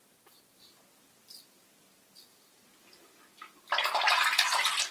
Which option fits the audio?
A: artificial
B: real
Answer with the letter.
B